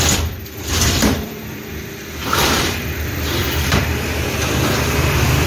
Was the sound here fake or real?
fake